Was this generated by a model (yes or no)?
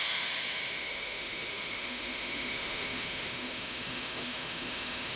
yes